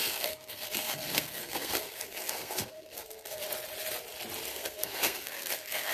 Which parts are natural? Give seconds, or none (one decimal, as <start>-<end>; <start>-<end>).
3.4-4.5